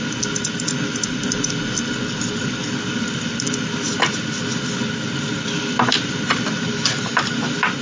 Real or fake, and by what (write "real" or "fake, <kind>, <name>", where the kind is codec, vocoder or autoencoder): real